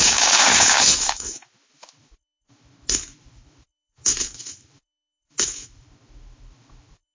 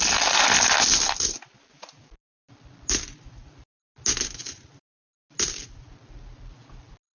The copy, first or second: first